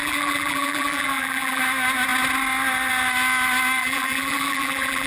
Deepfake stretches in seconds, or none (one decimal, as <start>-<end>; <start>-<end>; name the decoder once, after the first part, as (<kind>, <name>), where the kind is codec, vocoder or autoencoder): 0.0-1.6 (vocoder, BigVGAN v2); 3.8-5.1